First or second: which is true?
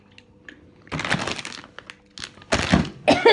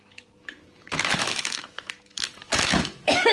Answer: first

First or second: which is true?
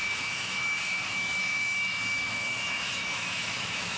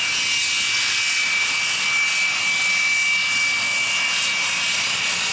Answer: second